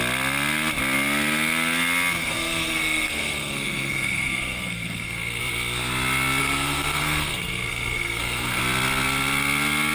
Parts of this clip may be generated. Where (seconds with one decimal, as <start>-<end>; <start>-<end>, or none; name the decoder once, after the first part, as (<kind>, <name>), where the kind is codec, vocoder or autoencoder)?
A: 2.2-5.4 (codec, SNAC); 6.4-8.6